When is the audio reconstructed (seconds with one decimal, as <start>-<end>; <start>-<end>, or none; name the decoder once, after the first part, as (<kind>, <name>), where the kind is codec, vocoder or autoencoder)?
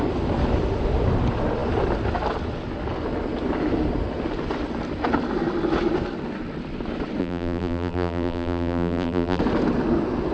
7.2-9.4 (vocoder, BigVGAN v2)